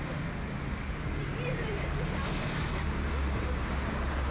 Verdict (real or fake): real